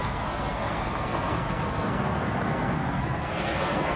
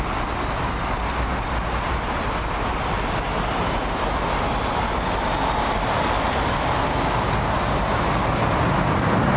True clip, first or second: second